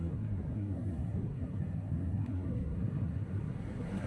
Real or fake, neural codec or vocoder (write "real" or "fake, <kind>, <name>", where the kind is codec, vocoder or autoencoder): fake, codec, SNAC